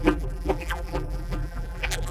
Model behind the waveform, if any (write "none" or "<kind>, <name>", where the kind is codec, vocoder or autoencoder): vocoder, BigVGAN v2